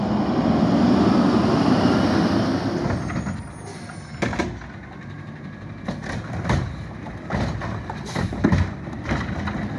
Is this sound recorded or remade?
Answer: recorded